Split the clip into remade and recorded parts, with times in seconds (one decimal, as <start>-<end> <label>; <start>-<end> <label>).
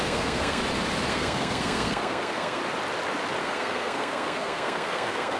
0.0-0.6 remade; 0.6-1.1 recorded; 1.1-2.6 remade; 2.6-3.4 recorded; 3.4-5.4 remade